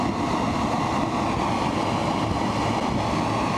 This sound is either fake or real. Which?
real